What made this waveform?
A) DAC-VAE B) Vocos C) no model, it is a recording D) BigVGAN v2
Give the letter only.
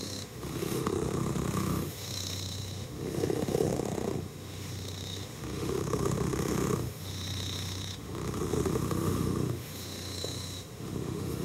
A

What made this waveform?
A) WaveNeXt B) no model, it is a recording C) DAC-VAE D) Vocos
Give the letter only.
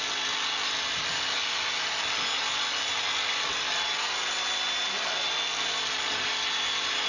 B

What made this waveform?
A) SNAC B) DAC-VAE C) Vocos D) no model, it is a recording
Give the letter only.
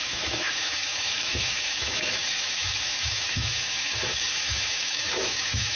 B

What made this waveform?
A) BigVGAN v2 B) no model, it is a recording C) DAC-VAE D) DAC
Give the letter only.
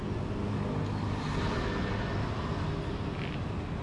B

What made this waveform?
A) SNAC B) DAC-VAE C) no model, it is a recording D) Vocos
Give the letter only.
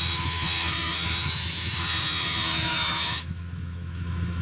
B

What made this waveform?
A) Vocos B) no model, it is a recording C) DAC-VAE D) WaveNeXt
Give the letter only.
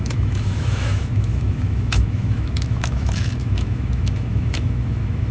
C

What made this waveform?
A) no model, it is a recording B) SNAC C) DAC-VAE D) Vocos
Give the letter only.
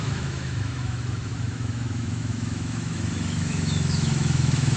C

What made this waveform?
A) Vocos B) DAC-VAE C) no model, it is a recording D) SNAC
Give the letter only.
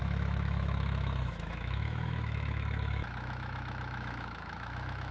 B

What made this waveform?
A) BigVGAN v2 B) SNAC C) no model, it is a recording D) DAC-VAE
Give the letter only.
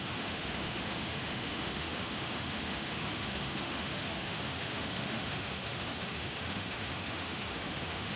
D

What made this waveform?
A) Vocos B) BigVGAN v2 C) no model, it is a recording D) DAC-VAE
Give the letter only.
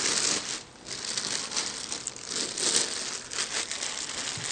C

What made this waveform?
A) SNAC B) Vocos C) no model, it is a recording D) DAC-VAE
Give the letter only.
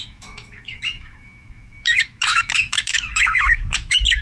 D